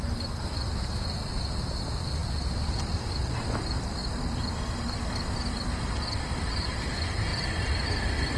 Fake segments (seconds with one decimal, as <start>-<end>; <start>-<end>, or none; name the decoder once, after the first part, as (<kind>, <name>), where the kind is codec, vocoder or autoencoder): 0.0-4.0 (vocoder, BigVGAN v2); 6.4-7.3